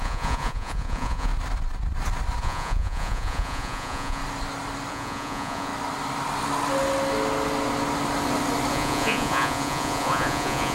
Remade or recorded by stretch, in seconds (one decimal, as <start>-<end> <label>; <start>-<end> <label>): 0.0-1.3 remade; 1.3-2.4 recorded; 2.4-4.2 remade; 4.2-4.9 recorded; 4.9-5.7 remade; 5.7-8.7 recorded; 8.7-10.7 remade